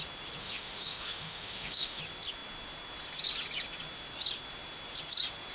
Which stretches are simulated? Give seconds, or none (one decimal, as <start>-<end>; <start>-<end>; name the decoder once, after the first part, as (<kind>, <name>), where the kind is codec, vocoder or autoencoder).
0.4-2.0 (autoencoder, DAC-VAE)